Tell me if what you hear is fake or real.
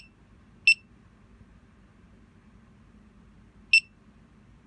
real